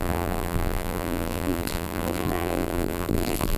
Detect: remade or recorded remade